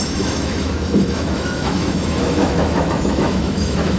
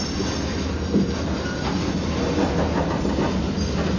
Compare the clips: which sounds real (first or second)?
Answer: second